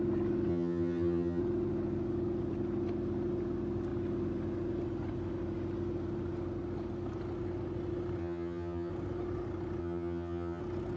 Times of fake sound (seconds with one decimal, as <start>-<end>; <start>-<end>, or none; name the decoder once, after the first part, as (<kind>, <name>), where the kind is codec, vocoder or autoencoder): 0.5-1.4 (vocoder, HiFi-GAN); 8.2-8.9; 9.8-10.6